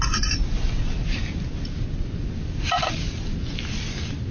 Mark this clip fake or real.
real